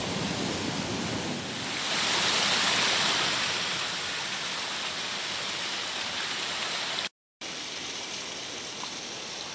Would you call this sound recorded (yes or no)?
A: yes